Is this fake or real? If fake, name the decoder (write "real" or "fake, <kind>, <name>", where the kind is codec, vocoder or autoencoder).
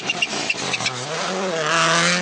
real